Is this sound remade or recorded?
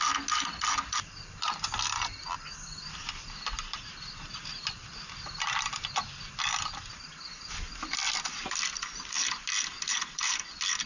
recorded